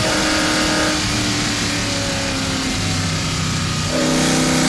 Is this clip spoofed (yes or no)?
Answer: no